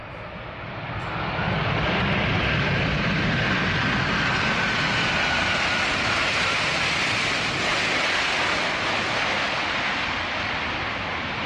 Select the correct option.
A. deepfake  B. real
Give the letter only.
B